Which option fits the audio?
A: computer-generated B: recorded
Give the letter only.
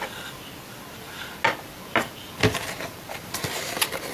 B